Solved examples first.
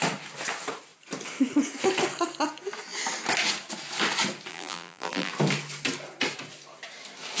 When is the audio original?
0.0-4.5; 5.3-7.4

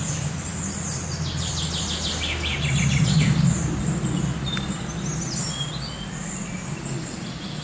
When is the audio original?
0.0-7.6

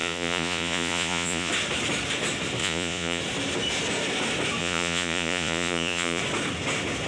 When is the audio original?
1.5-2.6; 3.2-4.6; 6.2-7.1